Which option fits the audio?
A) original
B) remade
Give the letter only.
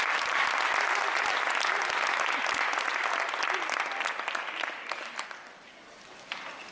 A